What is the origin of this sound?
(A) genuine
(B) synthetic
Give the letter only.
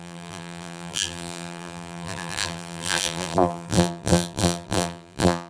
B